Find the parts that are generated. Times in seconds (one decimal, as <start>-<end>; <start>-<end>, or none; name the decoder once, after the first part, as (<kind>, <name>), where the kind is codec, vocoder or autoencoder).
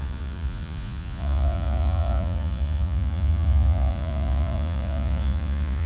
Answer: 0.0-5.9 (vocoder, Vocos)